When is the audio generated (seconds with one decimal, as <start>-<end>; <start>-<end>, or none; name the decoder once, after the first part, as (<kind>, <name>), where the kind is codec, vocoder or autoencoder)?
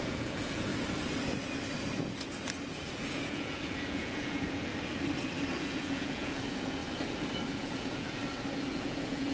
0.0-0.7 (vocoder, Vocos); 2.7-4.7; 5.6-6.8; 7.5-8.2; 8.7-9.3